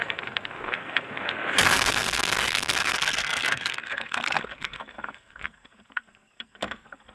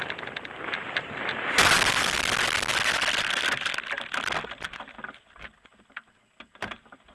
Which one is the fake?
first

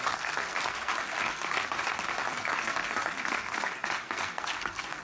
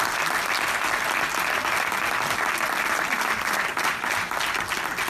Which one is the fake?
first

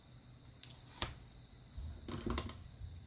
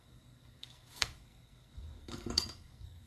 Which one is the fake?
second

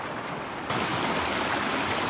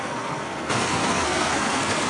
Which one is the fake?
second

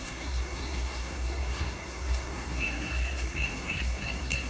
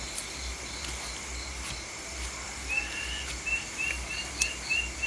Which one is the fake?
first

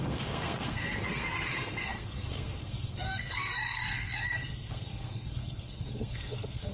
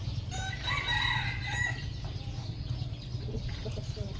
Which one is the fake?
first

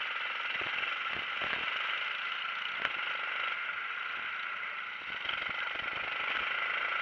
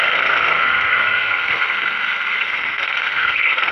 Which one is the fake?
second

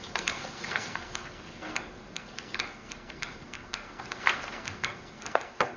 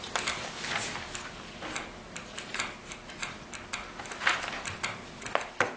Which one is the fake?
first